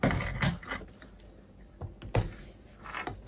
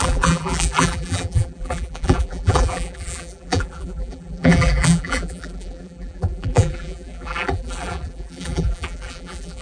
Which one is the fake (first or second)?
second